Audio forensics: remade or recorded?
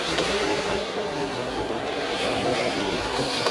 remade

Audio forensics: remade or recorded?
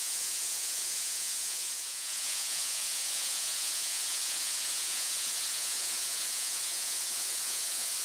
remade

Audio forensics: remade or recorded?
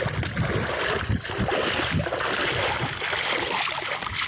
recorded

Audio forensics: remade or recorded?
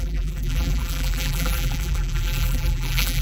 remade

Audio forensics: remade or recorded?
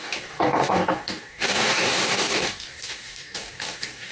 remade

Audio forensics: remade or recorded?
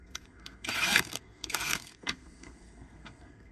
remade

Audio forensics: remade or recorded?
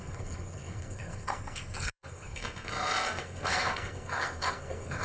remade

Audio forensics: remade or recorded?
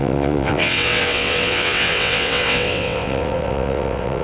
remade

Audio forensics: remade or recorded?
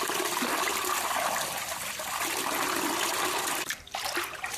recorded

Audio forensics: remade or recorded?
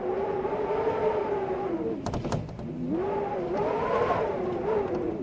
recorded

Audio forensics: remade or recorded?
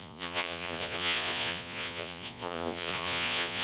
remade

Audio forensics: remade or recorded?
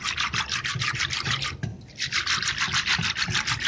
recorded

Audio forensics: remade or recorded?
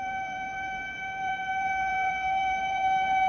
remade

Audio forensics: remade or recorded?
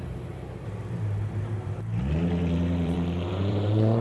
remade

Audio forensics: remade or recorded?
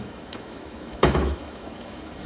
remade